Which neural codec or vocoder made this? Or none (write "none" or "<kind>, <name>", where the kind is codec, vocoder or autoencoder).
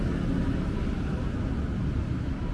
none